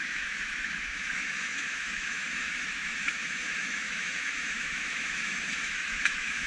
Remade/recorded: remade